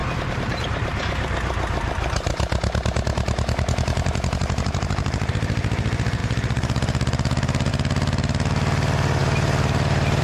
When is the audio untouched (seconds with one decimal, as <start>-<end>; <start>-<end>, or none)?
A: 5.3-6.2; 7.7-9.2